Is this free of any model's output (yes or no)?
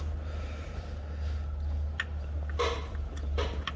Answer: yes